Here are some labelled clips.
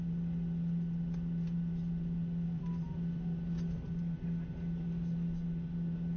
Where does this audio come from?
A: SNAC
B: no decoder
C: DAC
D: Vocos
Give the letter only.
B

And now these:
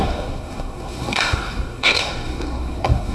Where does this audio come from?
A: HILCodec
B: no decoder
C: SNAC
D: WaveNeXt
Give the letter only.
C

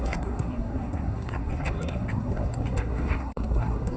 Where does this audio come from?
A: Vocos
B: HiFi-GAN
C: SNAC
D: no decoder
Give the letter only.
C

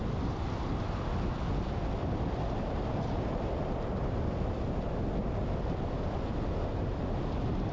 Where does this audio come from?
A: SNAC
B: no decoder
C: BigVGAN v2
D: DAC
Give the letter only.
B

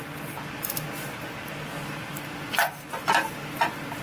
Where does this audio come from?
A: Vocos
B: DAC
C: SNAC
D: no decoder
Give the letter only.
D